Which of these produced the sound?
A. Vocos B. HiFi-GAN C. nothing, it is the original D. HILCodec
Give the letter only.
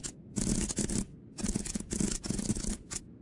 C